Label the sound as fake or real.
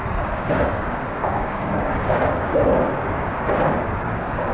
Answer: fake